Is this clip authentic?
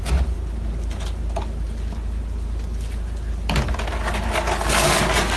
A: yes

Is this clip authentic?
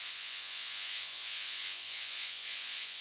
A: no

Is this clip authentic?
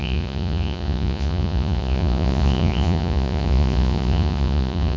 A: no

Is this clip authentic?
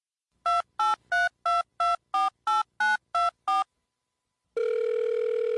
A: yes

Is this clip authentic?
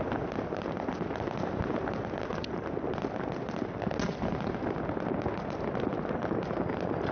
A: yes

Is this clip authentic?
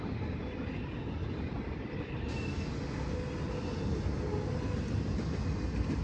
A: yes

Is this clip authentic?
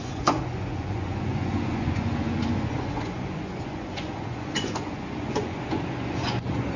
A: no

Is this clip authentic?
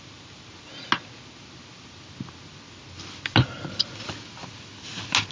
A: yes